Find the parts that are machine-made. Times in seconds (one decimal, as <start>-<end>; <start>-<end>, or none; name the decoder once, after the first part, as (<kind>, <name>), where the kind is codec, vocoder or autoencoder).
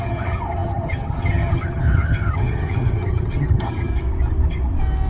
0.0-3.9 (vocoder, HiFi-GAN)